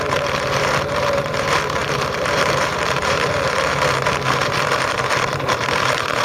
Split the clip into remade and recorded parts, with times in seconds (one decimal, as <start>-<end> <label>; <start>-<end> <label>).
0.0-6.2 remade